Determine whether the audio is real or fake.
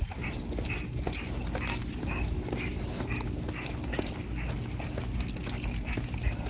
real